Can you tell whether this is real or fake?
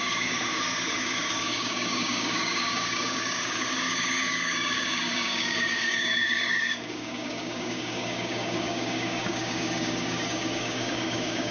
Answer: fake